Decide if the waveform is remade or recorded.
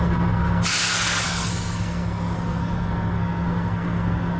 remade